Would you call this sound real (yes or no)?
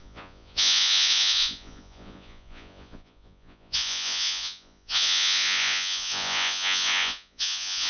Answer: no